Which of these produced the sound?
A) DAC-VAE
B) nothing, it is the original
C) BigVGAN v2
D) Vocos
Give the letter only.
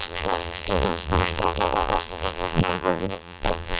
C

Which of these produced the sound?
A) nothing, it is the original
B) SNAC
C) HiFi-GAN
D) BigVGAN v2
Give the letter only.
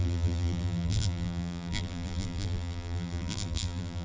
D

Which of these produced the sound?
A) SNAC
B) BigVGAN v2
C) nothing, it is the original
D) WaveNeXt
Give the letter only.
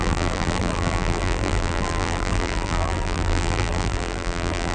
B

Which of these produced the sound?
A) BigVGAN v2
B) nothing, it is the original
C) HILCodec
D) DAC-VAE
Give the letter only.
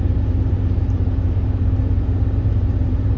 A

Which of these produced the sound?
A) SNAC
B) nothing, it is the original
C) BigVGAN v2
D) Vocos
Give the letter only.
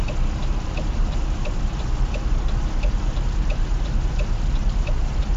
C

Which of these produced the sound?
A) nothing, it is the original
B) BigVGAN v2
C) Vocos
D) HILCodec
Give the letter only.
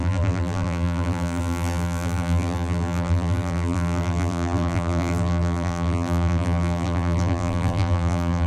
B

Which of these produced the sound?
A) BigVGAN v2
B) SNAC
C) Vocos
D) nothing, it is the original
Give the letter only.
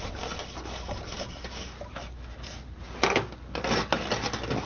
D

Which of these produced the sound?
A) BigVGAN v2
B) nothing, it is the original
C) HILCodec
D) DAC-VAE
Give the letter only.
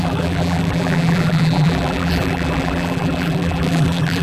A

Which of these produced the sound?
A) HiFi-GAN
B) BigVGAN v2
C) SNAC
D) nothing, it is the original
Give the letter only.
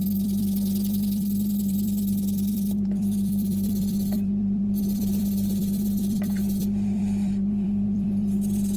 B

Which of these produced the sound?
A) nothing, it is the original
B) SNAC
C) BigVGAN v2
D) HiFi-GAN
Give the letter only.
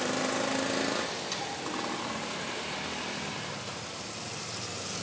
A